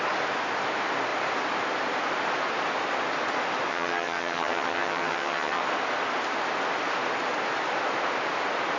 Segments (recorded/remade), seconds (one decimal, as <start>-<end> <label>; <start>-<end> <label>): 0.0-3.7 recorded; 3.7-5.6 remade; 5.6-8.8 recorded